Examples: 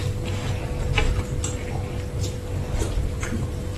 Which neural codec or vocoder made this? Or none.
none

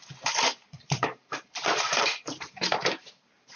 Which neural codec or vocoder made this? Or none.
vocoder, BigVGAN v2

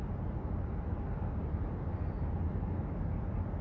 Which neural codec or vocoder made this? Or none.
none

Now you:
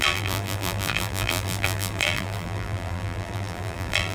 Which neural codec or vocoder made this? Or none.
vocoder, BigVGAN v2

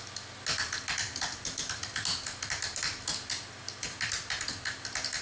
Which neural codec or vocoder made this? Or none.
none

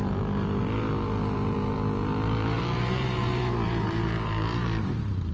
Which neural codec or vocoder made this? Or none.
vocoder, BigVGAN v2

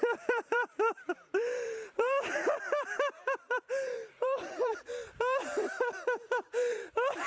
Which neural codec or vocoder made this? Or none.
vocoder, BigVGAN v2